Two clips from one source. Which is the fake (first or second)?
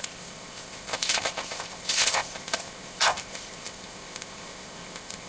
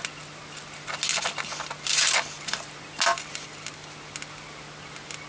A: first